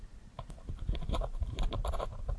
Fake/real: fake